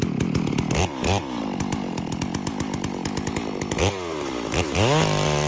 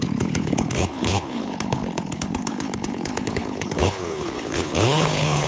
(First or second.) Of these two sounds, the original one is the first